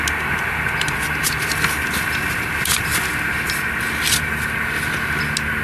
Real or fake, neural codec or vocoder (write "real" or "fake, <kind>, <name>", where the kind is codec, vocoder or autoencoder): real